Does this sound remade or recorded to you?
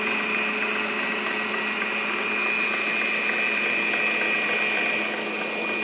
recorded